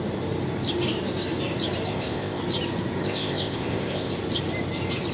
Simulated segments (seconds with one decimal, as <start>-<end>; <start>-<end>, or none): 1.9-2.4; 3.0-4.1